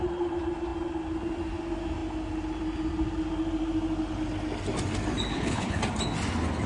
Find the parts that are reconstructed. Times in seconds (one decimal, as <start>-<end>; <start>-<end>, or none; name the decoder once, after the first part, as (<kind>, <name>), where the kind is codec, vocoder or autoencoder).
5.3-5.8 (codec, HILCodec)